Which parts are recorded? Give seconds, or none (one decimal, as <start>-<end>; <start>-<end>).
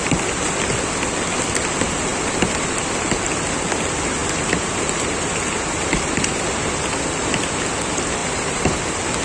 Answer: 0.0-8.2